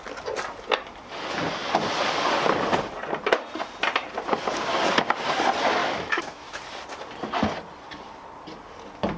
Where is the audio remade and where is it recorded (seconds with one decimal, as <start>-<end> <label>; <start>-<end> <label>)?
0.0-5.8 recorded; 5.8-6.6 remade; 6.6-9.2 recorded